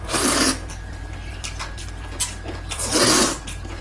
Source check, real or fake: real